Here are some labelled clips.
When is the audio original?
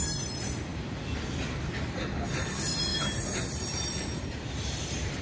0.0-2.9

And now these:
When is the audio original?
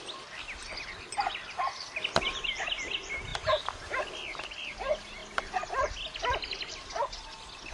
0.0-7.7